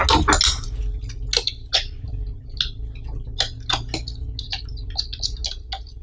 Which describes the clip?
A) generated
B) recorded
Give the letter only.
B